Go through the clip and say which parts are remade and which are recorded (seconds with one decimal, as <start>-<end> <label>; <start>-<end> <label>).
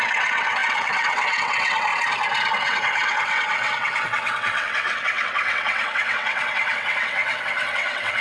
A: 0.0-1.9 remade; 1.9-2.5 recorded; 2.5-8.2 remade